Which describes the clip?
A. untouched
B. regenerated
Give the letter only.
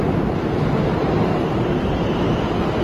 A